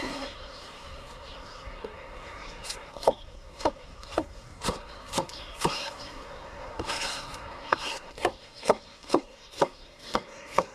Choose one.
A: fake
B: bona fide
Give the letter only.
A